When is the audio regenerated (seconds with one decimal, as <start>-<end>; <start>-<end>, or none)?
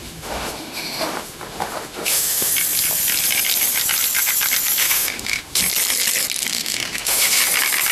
0.0-2.5; 4.8-5.6; 6.5-7.4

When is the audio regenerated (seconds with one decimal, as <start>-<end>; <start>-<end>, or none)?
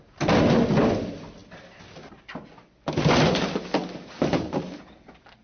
none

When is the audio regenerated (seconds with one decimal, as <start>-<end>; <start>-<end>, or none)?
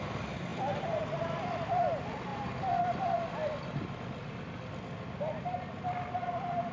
none